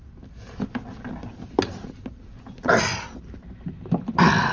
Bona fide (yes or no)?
yes